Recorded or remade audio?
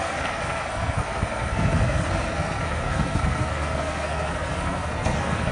remade